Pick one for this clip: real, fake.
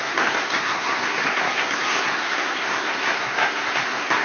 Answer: fake